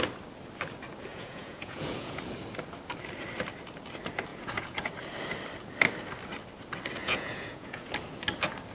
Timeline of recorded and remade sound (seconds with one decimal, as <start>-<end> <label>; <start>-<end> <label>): 0.0-1.1 recorded; 1.1-2.2 remade; 2.2-4.3 recorded; 4.3-4.9 remade; 4.9-7.0 recorded; 7.0-7.9 remade; 7.9-8.7 recorded